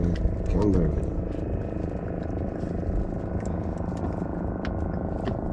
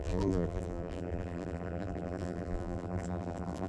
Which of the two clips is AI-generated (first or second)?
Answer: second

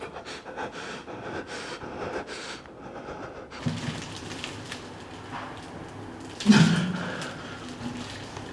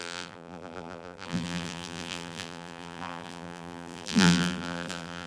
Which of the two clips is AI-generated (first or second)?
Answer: second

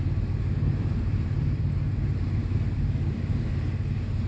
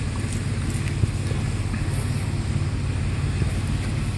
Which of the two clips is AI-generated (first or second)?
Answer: first